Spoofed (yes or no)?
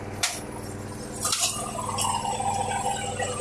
no